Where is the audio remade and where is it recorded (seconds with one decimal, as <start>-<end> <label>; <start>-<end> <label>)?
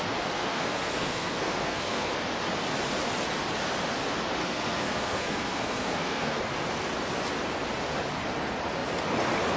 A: 0.0-0.4 recorded; 0.4-2.1 remade; 2.1-4.4 recorded; 4.4-6.4 remade; 6.4-9.6 recorded